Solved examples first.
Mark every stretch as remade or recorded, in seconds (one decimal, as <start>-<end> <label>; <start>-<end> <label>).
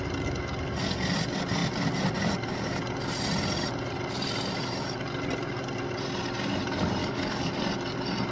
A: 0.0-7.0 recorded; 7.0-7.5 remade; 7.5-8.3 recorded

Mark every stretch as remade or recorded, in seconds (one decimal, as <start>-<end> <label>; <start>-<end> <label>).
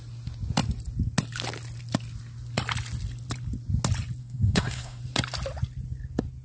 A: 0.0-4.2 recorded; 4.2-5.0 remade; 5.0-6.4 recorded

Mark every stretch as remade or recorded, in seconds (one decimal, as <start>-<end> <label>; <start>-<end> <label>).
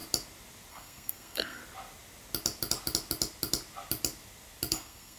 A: 0.0-0.7 recorded; 0.7-1.6 remade; 1.6-4.7 recorded; 4.7-5.2 remade